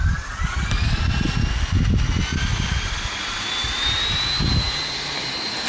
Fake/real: real